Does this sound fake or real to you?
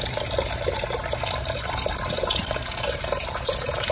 real